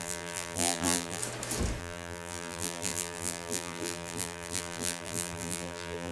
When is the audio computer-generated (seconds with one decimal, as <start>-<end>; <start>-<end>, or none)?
0.0-1.2; 1.8-6.1